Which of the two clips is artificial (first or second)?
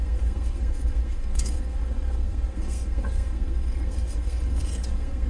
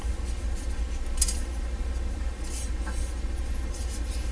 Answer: first